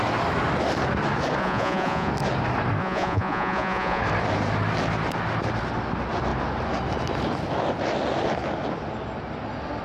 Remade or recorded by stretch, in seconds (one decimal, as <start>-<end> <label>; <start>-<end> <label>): 0.0-1.4 recorded; 1.4-2.1 remade; 2.1-2.8 recorded; 2.8-4.0 remade; 4.0-9.8 recorded